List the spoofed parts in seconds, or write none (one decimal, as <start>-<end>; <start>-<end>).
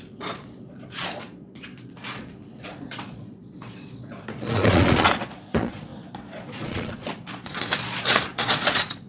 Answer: 0.0-9.1